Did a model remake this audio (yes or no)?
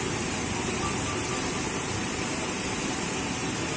no